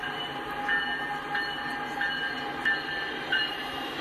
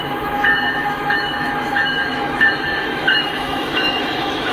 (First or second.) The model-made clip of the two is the second